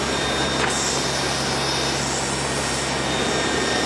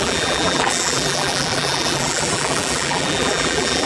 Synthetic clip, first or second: second